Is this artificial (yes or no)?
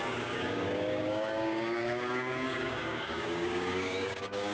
yes